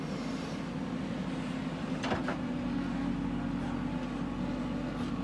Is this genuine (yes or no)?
yes